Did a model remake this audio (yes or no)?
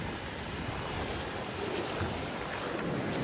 yes